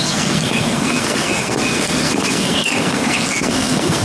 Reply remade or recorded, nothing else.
remade